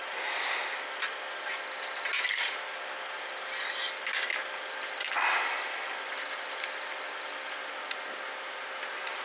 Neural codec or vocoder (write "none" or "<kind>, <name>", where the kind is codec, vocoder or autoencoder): none